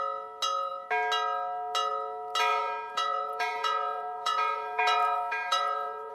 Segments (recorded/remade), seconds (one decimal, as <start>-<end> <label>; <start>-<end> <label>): 0.0-2.5 recorded; 2.5-6.1 remade